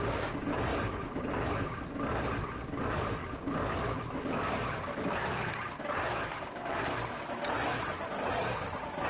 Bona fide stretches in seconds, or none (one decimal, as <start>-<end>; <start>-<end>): 0.0-9.1